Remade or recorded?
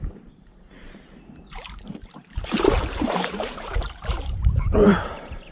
remade